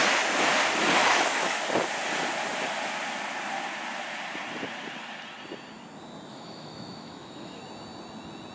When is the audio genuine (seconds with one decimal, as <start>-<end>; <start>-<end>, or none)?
0.0-1.0; 1.6-6.3; 7.6-8.5

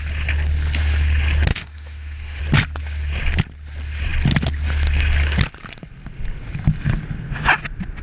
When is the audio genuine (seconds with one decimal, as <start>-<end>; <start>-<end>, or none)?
0.0-1.5; 2.4-8.0